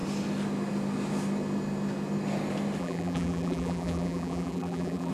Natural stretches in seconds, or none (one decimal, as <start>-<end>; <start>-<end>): 0.0-2.8